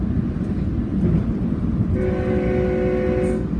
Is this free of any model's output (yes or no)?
yes